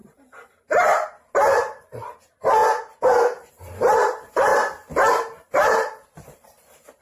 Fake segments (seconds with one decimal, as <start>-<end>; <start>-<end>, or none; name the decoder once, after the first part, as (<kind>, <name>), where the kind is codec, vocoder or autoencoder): 0.0-2.6 (vocoder, BigVGAN v2); 3.5-4.5; 5.1-7.0